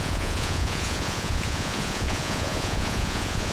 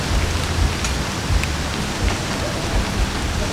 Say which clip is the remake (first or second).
first